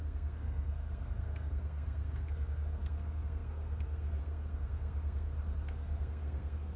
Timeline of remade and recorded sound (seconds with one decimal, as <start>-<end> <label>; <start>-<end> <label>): 0.0-6.8 remade